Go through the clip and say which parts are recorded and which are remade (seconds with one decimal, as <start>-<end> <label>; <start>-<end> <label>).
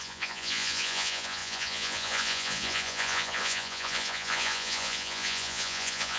0.0-6.2 remade